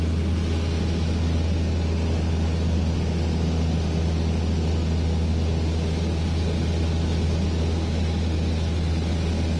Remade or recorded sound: recorded